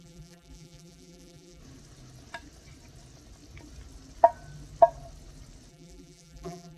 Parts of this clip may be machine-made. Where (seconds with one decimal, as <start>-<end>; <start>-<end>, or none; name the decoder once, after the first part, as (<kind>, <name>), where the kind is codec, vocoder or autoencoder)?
0.0-1.6 (vocoder, BigVGAN v2); 5.7-6.8